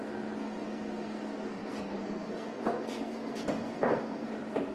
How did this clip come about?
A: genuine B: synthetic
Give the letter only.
B